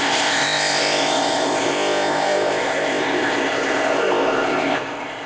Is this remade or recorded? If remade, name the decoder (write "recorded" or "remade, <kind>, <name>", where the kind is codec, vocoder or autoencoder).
remade, codec, ZipCodec